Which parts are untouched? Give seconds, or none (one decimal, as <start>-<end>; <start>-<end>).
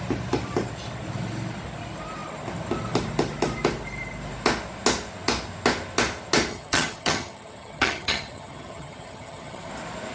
0.0-6.5; 9.7-10.1